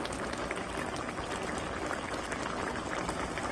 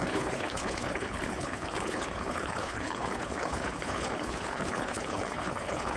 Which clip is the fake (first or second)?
second